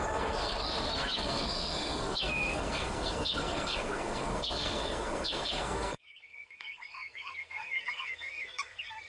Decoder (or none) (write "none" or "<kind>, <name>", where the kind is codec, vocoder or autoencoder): codec, SNAC